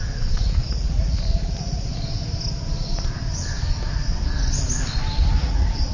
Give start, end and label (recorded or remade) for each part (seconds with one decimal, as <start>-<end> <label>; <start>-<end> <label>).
0.0-1.9 remade; 1.9-5.4 recorded; 5.4-5.9 remade